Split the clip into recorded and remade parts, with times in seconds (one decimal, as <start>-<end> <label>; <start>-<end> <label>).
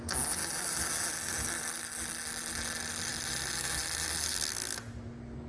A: 0.0-5.5 recorded